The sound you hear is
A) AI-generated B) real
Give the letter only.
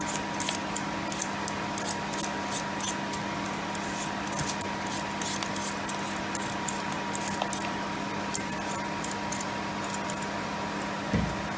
B